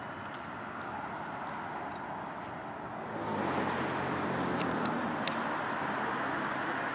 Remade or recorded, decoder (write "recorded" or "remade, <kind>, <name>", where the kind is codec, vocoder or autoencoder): recorded